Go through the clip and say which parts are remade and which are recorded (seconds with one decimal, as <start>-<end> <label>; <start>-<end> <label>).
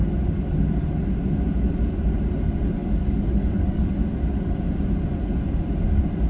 0.0-2.8 recorded; 2.8-3.9 remade; 3.9-6.3 recorded